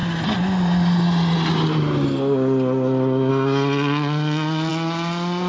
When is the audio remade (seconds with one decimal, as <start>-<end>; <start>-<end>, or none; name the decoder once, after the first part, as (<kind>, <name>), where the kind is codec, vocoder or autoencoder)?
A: none